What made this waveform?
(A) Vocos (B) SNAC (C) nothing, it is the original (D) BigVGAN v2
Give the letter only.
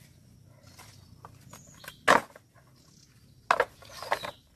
C